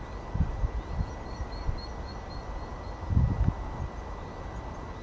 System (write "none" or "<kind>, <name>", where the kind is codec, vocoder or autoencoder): none